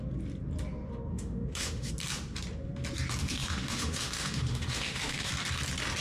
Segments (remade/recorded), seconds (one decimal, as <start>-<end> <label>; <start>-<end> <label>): 0.0-1.1 recorded; 1.1-1.9 remade; 1.9-3.2 recorded; 3.2-5.3 remade; 5.3-6.0 recorded